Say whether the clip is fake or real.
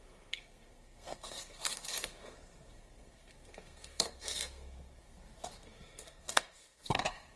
fake